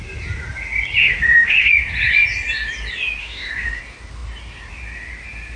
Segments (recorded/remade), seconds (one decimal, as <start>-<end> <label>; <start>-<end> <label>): 0.0-1.0 recorded; 1.0-1.7 remade; 1.7-3.2 recorded; 3.2-3.8 remade; 3.8-5.6 recorded